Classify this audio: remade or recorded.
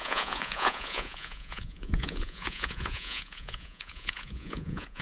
remade